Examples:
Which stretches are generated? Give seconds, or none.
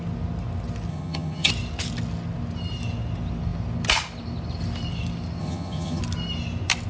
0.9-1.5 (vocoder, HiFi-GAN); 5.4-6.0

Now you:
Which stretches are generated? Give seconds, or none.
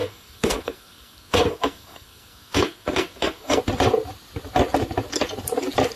0.0-3.6 (codec, SNAC)